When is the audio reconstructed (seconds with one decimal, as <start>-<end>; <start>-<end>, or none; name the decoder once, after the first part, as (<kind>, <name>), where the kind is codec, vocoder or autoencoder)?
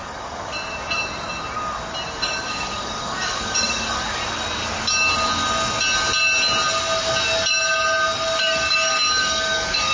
0.0-0.5 (codec, DAC); 2.2-4.2; 8.4-9.9